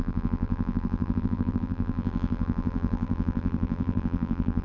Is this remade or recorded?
remade